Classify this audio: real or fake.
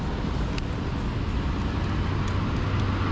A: real